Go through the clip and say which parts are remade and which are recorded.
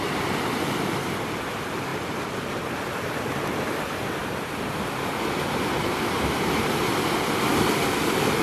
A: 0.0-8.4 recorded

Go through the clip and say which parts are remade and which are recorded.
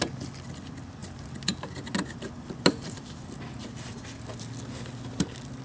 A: 0.0-5.6 recorded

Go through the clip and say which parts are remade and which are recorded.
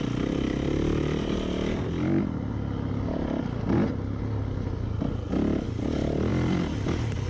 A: 0.0-7.3 recorded